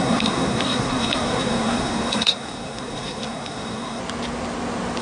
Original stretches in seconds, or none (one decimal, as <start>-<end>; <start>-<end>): 4.0-5.0